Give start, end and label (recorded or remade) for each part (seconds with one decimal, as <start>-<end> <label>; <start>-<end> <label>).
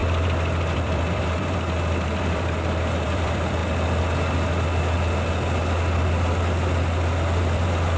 0.0-3.6 remade; 3.6-7.4 recorded; 7.4-8.0 remade